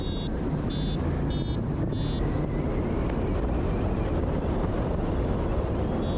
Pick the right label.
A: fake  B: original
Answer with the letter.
B